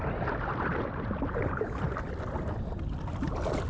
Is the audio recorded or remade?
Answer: recorded